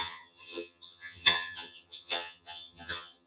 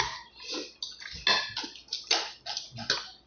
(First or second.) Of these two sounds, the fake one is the first